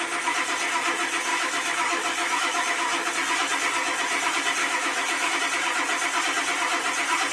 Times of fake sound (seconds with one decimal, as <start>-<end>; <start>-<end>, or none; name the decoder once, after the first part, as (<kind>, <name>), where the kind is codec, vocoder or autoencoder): 1.3-3.1 (autoencoder, DAC-VAE); 4.6-5.4